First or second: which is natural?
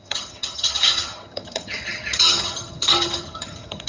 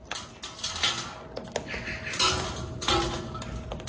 second